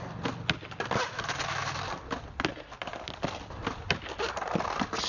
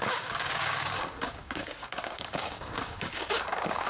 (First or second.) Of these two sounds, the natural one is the first